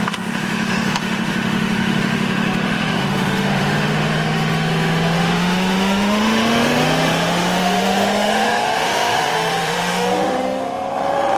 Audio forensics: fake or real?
fake